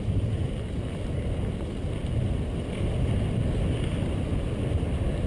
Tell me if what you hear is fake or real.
real